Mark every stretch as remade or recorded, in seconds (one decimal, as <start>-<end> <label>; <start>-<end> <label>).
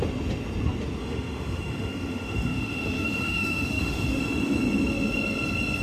0.0-1.0 recorded; 1.0-4.2 remade; 4.2-5.8 recorded